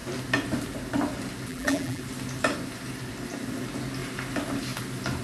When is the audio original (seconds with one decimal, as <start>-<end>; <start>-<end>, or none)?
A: 0.0-1.5; 2.0-5.2